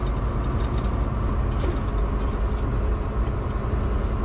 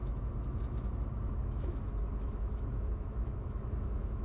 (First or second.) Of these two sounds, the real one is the first